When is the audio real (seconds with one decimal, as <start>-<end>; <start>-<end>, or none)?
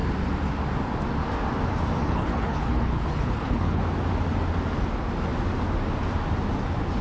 0.0-2.0; 3.8-7.0